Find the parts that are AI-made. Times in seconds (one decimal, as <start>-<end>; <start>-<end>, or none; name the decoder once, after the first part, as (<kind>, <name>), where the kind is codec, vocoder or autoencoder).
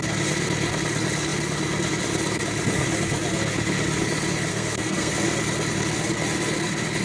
4.5-5.1 (codec, SNAC)